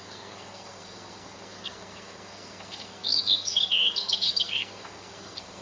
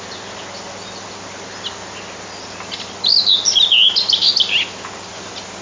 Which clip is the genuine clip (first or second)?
second